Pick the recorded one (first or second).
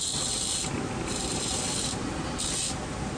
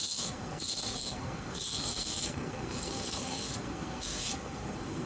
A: first